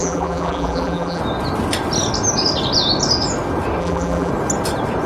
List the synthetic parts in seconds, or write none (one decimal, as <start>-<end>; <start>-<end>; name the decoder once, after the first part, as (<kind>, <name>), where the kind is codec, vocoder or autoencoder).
0.0-1.2 (vocoder, BigVGAN v2); 3.8-4.3